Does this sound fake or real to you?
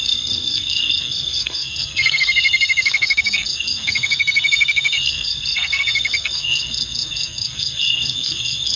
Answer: fake